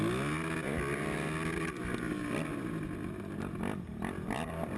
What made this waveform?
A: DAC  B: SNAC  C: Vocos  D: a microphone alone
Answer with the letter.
D